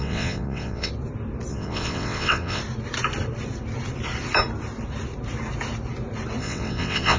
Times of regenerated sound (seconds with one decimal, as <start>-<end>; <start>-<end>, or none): 0.0-0.9; 1.5-2.6; 6.4-7.2